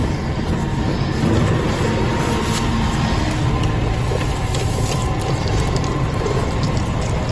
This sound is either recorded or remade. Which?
recorded